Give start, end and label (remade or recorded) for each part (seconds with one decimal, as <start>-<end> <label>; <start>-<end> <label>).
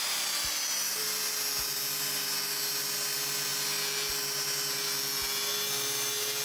0.0-6.4 recorded